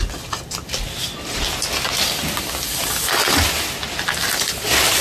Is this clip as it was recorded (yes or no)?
yes